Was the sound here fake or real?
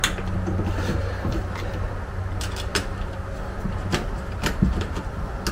real